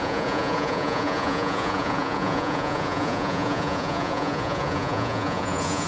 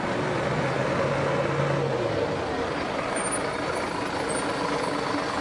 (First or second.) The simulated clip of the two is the first